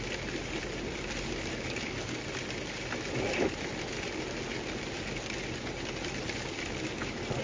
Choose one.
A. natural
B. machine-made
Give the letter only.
A